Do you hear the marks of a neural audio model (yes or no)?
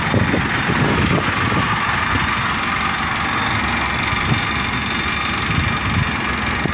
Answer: no